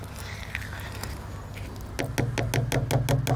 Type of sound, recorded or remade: recorded